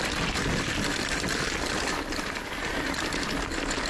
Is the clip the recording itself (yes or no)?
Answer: yes